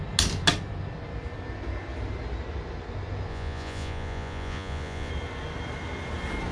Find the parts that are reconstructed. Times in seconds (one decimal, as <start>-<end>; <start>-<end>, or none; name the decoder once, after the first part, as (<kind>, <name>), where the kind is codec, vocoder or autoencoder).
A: 3.3-5.1 (vocoder, Vocos)